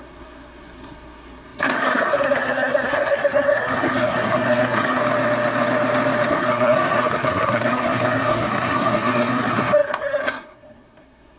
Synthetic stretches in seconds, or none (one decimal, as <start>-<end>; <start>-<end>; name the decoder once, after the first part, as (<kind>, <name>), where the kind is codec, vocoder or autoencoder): 0.0-5.0 (codec, SNAC); 6.3-11.4